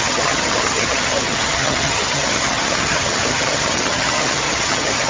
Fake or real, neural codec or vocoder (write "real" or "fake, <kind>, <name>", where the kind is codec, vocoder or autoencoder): fake, vocoder, HiFi-GAN